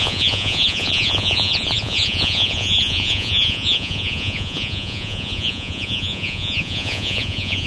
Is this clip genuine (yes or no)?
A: no